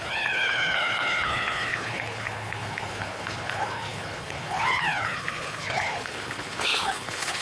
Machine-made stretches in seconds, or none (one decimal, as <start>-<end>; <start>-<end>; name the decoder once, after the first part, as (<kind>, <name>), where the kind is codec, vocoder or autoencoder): 0.0-7.4 (codec, HILCodec)